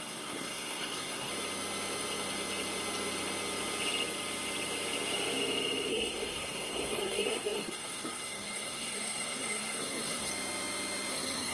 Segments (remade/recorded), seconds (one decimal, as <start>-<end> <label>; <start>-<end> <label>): 0.0-1.3 remade; 1.3-5.9 recorded; 5.9-10.3 remade; 10.3-11.1 recorded; 11.1-11.5 remade